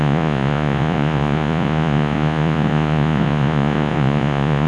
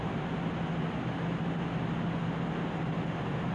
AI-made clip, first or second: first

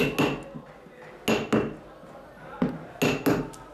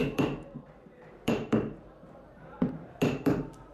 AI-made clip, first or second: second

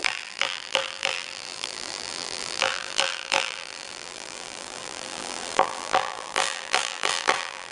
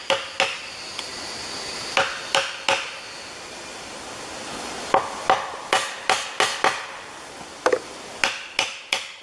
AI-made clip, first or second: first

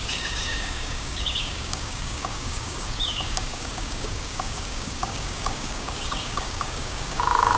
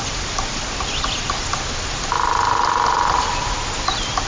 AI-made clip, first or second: first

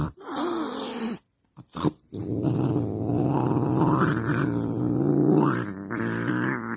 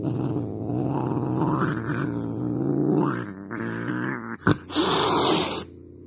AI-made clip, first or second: first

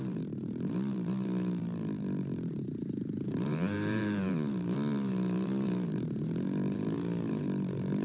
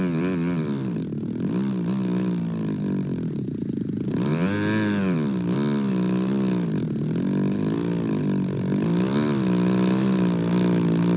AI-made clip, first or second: first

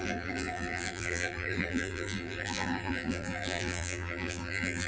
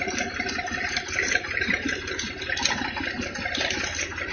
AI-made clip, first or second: first